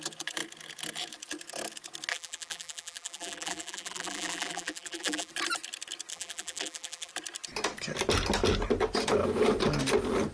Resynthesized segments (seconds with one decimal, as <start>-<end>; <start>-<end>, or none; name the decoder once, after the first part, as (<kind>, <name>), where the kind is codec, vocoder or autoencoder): 2.1-5.3 (vocoder, BigVGAN v2); 6.1-7.1